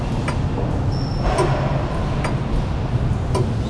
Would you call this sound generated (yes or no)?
no